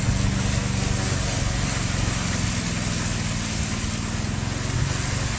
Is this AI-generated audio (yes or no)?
no